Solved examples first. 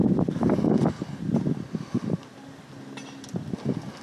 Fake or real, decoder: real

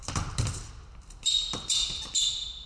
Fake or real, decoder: real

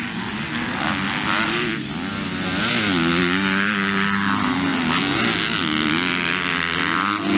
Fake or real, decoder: real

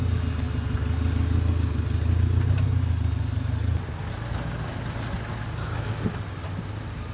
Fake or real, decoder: real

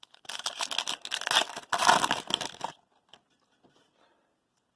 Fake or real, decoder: real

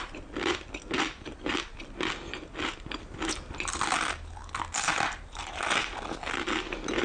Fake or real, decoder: real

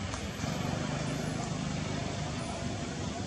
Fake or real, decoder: real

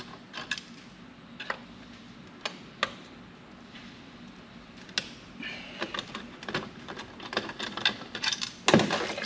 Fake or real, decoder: real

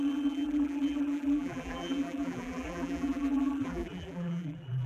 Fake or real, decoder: fake, vocoder, BigVGAN v2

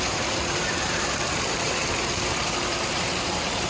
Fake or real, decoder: fake, vocoder, BigVGAN v2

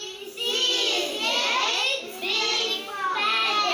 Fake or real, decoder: real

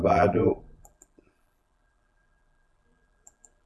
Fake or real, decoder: fake, vocoder, BigVGAN v2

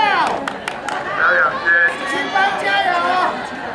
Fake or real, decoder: real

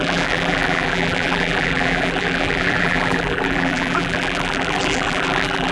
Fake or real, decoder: fake, vocoder, BigVGAN v2